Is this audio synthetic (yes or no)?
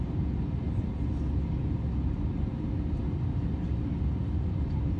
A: no